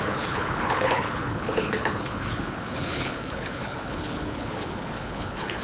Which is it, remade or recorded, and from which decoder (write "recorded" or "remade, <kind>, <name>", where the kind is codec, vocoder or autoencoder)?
remade, codec, HILCodec